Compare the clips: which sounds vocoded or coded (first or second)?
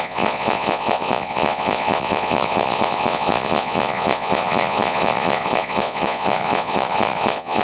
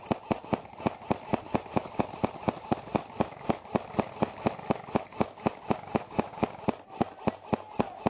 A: first